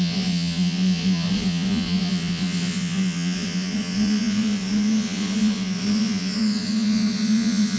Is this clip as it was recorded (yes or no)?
no